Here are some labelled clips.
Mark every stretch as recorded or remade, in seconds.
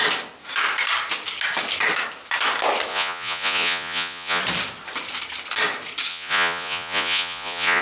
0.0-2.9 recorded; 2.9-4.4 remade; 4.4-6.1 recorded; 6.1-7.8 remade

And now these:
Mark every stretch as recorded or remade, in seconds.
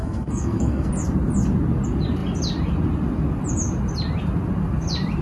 0.0-0.9 remade; 0.9-5.2 recorded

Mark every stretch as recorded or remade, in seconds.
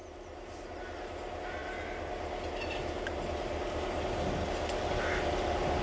0.0-5.8 recorded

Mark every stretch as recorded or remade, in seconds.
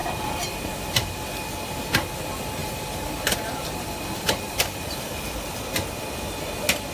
0.0-2.6 recorded; 2.6-5.1 remade; 5.1-6.9 recorded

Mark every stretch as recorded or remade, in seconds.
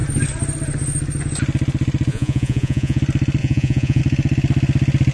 0.0-2.1 recorded; 2.1-3.0 remade; 3.0-3.4 recorded; 3.4-4.0 remade; 4.0-5.1 recorded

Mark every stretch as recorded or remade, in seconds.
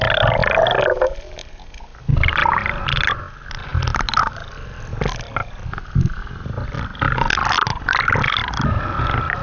0.0-9.4 recorded